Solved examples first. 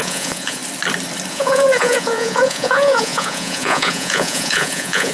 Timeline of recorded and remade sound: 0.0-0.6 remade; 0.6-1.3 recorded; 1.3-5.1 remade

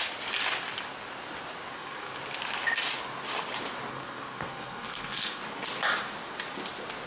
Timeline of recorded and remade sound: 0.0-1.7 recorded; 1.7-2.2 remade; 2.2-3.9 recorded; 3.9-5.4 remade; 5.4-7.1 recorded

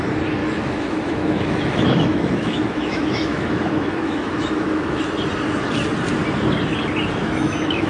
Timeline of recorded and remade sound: 0.0-0.4 recorded; 0.4-5.0 remade; 5.0-7.2 recorded; 7.2-7.9 remade

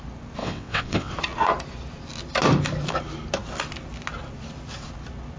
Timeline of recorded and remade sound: 0.0-0.4 recorded; 0.4-1.1 remade; 1.1-5.4 recorded

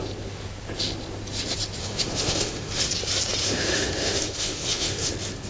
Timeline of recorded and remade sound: 0.0-1.8 recorded; 1.8-2.8 remade; 2.8-3.4 recorded; 3.4-5.1 remade; 5.1-5.5 recorded

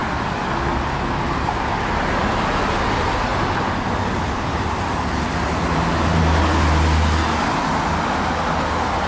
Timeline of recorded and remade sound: 0.0-3.3 recorded; 3.3-6.2 remade; 6.2-9.1 recorded

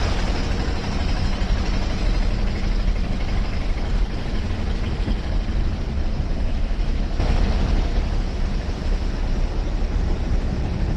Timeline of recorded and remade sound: 0.0-6.3 recorded; 6.3-7.4 remade; 7.4-11.0 recorded

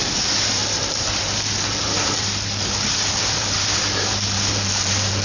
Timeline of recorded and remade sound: 0.0-5.2 remade